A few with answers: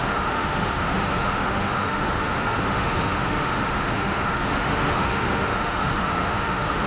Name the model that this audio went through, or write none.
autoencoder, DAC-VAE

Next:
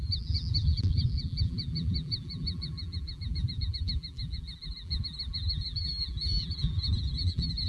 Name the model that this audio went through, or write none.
vocoder, BigVGAN v2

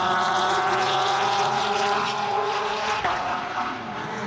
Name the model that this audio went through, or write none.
vocoder, Vocos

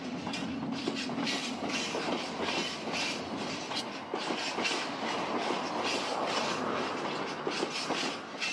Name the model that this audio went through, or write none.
none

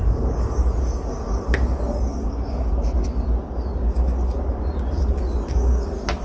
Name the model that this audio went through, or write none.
none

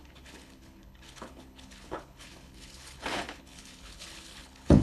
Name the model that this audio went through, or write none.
codec, HILCodec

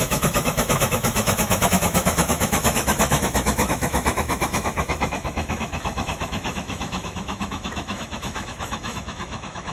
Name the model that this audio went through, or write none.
autoencoder, DAC-VAE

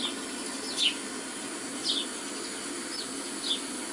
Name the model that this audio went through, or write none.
none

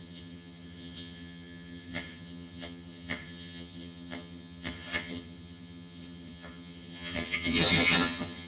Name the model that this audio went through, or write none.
vocoder, HiFi-GAN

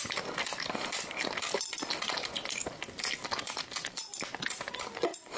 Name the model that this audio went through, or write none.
none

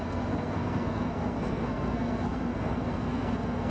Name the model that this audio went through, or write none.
codec, SNAC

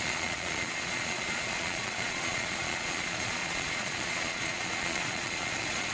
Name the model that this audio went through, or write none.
vocoder, Vocos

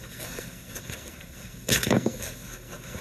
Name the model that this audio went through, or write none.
codec, SNAC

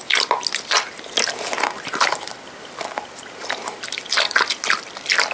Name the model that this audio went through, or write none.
none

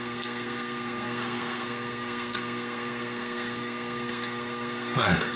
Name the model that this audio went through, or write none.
codec, SNAC